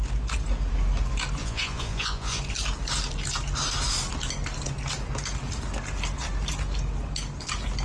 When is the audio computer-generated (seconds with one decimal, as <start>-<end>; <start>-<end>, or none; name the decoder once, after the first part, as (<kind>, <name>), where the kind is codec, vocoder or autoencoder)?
1.4-2.4 (vocoder, Vocos)